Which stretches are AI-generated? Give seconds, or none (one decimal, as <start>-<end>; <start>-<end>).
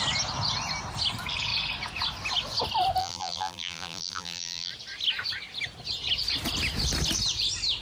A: 3.0-4.7